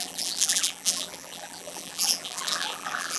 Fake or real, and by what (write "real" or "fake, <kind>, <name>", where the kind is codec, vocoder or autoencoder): fake, vocoder, BigVGAN v2